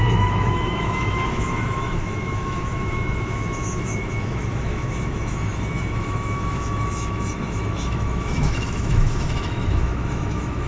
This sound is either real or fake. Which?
fake